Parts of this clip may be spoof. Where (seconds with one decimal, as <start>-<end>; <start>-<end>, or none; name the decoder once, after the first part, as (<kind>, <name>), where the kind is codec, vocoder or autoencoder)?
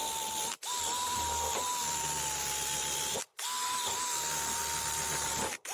none